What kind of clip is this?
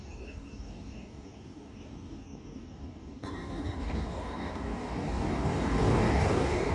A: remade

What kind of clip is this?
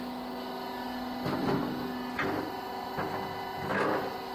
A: recorded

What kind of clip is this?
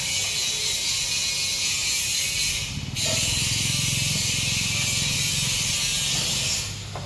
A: recorded